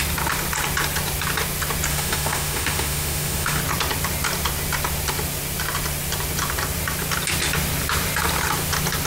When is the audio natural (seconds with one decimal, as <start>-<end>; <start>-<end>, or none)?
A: 0.0-1.9; 3.6-9.1

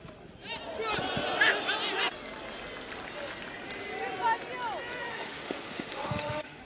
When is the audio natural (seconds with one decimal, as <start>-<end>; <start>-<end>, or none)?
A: 0.0-5.1

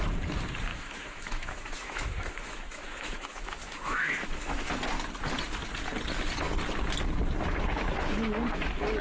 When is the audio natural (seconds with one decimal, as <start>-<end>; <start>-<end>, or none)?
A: 0.0-0.7; 4.7-9.0